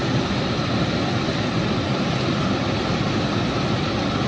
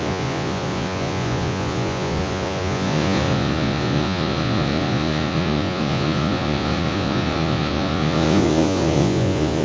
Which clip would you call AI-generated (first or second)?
second